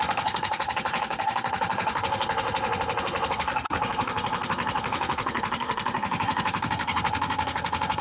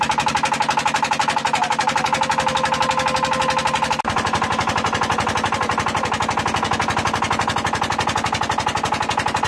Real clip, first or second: second